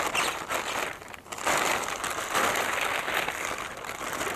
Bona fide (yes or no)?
yes